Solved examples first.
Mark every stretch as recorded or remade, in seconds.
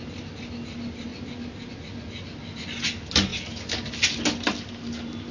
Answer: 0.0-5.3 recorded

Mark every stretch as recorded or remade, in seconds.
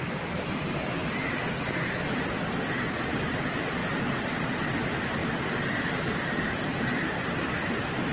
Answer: 0.0-3.8 recorded; 3.8-4.5 remade; 4.5-5.2 recorded; 5.2-7.5 remade; 7.5-8.1 recorded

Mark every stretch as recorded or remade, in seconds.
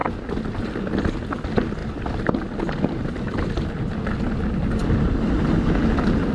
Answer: 0.0-0.6 remade; 0.6-1.8 recorded; 1.8-3.5 remade; 3.5-6.3 recorded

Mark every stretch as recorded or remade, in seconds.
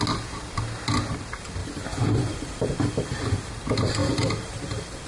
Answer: 0.0-1.6 recorded; 1.6-3.5 remade; 3.5-4.0 recorded; 4.0-5.1 remade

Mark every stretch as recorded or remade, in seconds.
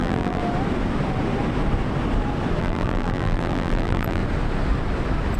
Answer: 0.0-0.4 remade; 0.4-2.6 recorded; 2.6-4.2 remade; 4.2-5.4 recorded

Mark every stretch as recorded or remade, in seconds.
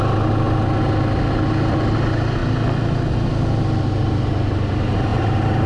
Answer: 0.0-5.1 recorded; 5.1-5.7 remade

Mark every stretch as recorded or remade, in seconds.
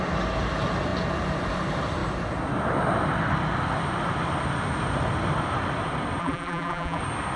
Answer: 0.0-6.2 recorded; 6.2-7.0 remade; 7.0-7.4 recorded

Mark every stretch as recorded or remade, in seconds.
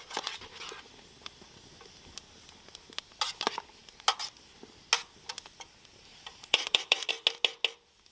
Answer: 0.0-6.1 recorded; 6.1-7.1 remade; 7.1-8.1 recorded